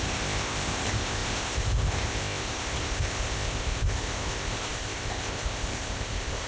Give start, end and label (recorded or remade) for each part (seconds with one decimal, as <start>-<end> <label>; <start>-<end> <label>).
0.0-6.5 remade

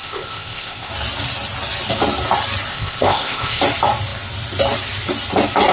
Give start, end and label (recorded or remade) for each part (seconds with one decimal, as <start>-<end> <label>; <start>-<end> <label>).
0.0-0.9 remade; 0.9-2.7 recorded; 2.7-3.6 remade; 3.6-5.7 recorded

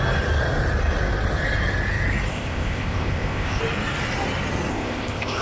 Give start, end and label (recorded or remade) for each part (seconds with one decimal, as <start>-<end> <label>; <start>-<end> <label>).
0.0-2.3 recorded; 2.3-3.6 remade; 3.6-4.7 recorded; 4.7-5.4 remade

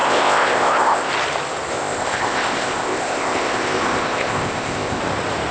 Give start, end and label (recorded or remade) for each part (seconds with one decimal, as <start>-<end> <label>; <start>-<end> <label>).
0.0-1.1 remade; 1.1-1.7 recorded; 1.7-5.0 remade; 5.0-5.5 recorded

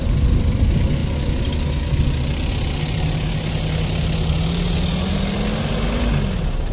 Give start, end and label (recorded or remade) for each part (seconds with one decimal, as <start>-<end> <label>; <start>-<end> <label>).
0.0-6.7 recorded

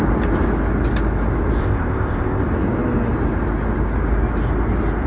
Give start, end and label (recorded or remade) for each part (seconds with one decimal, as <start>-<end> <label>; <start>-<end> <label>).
0.0-1.6 recorded; 1.6-2.4 remade; 2.4-5.1 recorded

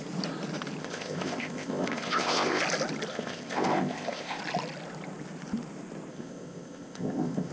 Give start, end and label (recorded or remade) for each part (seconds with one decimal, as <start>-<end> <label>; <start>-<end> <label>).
0.0-0.8 recorded; 0.8-2.6 remade; 2.6-3.1 recorded; 3.1-4.4 remade; 4.4-6.1 recorded; 6.1-7.5 remade